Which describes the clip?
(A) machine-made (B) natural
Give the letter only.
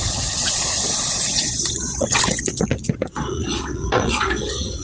A